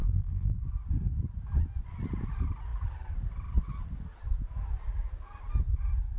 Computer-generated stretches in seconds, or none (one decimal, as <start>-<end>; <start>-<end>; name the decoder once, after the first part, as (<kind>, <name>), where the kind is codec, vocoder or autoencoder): 0.0-0.5 (vocoder, BigVGAN v2)